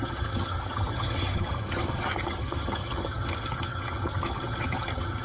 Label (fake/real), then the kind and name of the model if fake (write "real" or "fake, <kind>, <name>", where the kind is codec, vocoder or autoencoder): fake, vocoder, HiFi-GAN